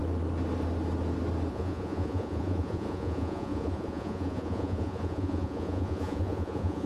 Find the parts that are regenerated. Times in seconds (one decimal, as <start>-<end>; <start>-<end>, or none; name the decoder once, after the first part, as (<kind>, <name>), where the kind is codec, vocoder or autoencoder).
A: 1.5-6.9 (vocoder, Vocos)